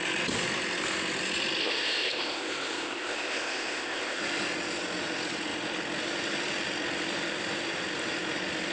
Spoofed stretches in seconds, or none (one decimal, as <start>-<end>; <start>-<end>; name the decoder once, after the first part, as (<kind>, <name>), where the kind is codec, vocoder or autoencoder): 1.6-4.2 (codec, ZipCodec)